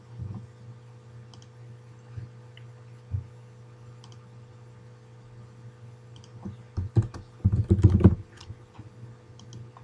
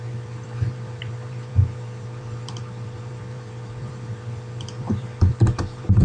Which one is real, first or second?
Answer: first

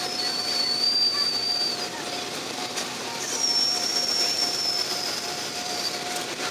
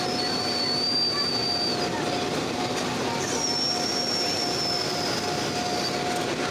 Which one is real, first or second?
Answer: second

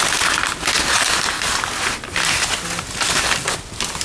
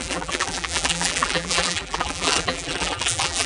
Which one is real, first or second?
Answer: first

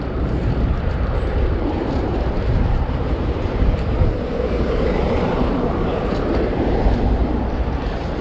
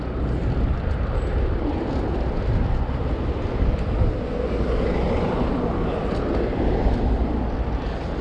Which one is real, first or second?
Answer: second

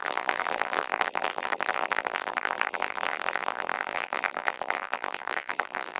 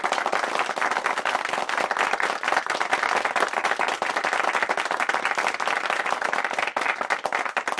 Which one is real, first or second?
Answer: second